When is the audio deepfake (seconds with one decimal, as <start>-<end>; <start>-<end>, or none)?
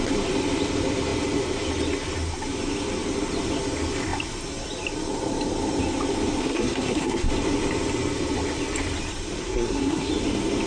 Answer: 6.4-7.3; 9.4-10.1